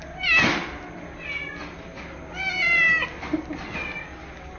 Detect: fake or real real